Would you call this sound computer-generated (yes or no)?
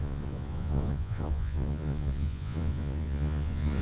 yes